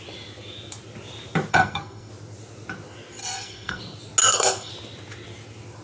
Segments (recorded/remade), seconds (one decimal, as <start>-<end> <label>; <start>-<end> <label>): 0.0-1.5 recorded; 1.5-2.1 remade; 2.1-3.2 recorded; 3.2-3.8 remade; 3.8-4.2 recorded; 4.2-4.7 remade; 4.7-5.8 recorded